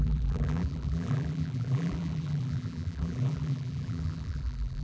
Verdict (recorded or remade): remade